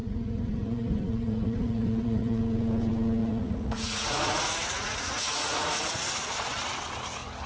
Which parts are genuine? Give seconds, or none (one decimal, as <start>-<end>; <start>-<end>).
2.4-3.2; 5.8-7.5